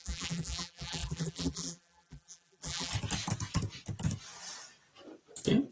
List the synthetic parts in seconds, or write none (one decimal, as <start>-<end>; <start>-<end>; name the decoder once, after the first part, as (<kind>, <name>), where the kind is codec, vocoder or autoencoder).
0.0-2.9 (vocoder, BigVGAN v2)